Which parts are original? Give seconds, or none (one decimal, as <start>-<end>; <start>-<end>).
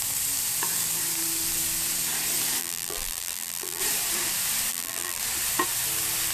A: 0.0-2.6; 3.8-4.7; 5.2-6.3